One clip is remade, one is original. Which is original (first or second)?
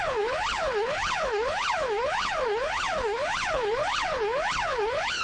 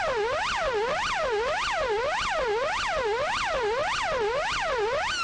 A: second